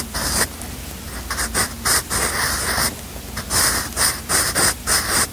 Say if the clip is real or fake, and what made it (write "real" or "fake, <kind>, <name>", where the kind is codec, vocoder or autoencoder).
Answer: real